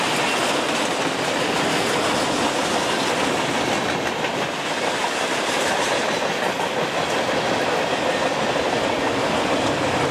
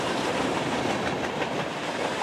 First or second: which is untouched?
first